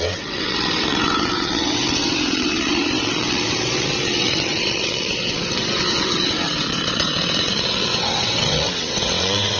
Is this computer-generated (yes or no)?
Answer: yes